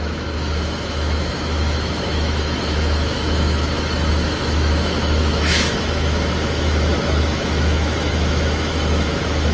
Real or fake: fake